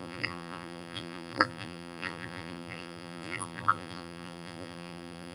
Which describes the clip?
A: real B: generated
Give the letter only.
B